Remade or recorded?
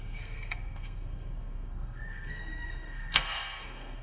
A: remade